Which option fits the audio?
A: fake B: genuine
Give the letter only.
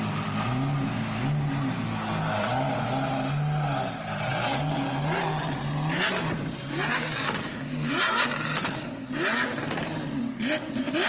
B